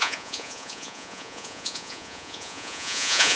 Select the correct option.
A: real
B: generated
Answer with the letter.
B